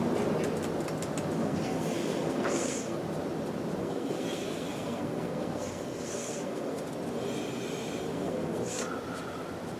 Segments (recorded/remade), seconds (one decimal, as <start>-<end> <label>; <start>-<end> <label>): 0.0-1.4 recorded; 1.4-3.0 remade; 3.0-3.8 recorded; 3.8-6.9 remade; 6.9-8.1 recorded; 8.1-8.8 remade; 8.8-9.8 recorded